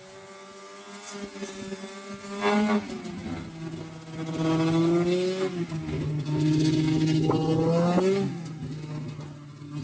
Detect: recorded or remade recorded